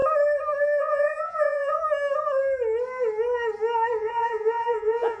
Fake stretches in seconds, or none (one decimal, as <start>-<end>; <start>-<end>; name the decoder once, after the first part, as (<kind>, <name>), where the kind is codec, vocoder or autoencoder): 0.8-1.8 (vocoder, Vocos); 4.0-5.2